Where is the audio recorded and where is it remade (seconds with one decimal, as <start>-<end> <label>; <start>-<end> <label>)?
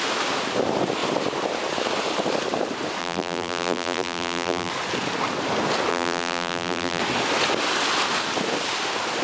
0.0-3.0 recorded; 3.0-4.7 remade; 4.7-5.9 recorded; 5.9-7.0 remade; 7.0-9.2 recorded